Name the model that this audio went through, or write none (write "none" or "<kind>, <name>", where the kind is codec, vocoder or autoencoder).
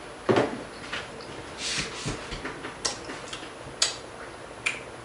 none